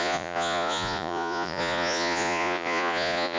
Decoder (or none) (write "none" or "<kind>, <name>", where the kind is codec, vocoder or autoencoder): vocoder, Vocos